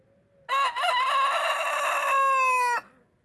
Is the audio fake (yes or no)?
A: no